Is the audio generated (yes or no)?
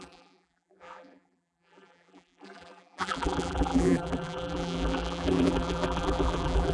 yes